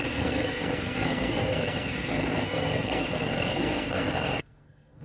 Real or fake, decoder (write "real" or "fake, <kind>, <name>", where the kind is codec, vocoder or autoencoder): fake, codec, SNAC